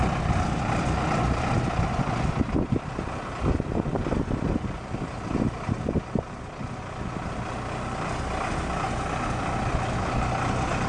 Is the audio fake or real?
real